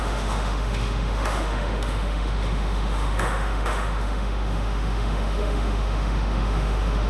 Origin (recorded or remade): remade